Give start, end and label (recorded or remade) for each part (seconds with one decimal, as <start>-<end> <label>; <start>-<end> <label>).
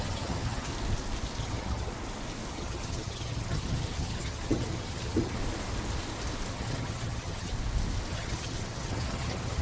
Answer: 0.0-0.7 remade; 0.7-1.4 recorded; 1.4-1.9 remade; 1.9-2.5 recorded; 2.5-5.4 remade; 5.4-6.5 recorded; 6.5-7.5 remade; 7.5-8.1 recorded; 8.1-9.6 remade